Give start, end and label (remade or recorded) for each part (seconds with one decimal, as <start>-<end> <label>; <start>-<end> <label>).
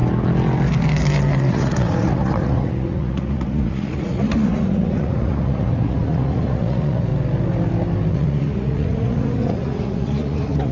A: 0.0-1.5 recorded; 1.5-7.1 remade; 7.1-8.1 recorded; 8.1-10.7 remade